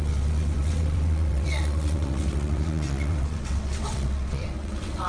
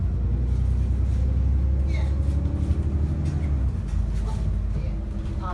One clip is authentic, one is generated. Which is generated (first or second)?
first